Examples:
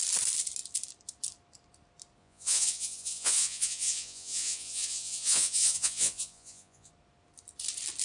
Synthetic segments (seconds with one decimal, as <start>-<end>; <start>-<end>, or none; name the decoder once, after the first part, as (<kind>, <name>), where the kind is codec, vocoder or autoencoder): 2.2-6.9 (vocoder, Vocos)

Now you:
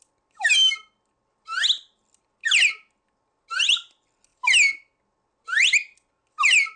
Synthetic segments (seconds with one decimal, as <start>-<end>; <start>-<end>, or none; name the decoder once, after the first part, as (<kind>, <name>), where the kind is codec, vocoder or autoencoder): none

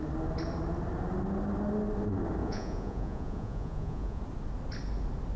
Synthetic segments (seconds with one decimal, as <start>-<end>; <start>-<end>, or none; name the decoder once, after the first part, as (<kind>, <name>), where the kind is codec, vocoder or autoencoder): 2.4-4.2 (vocoder, Vocos)